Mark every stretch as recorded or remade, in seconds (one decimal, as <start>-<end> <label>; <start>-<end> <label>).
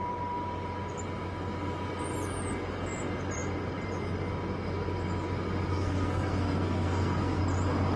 0.0-5.7 recorded; 5.7-7.4 remade; 7.4-8.0 recorded